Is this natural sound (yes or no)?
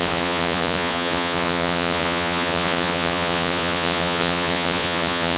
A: no